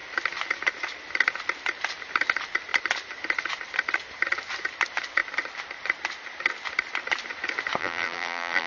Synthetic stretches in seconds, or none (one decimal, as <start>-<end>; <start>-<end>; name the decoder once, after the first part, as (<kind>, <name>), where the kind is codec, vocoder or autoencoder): 7.8-8.7 (vocoder, BigVGAN v2)